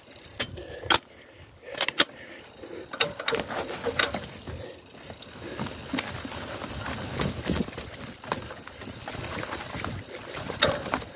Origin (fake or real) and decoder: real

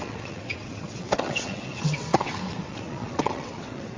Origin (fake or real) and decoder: fake, vocoder, WaveNeXt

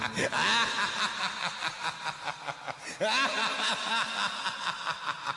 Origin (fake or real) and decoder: real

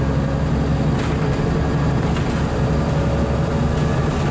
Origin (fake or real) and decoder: real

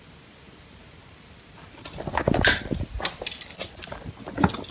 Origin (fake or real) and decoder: real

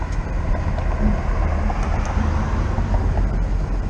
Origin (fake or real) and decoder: real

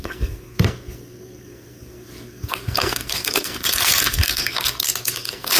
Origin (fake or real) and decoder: fake, codec, SNAC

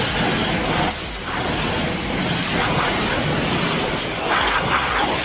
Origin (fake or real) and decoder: real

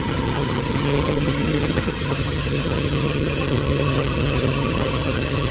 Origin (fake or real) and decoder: fake, vocoder, HiFi-GAN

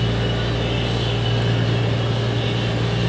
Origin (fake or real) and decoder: real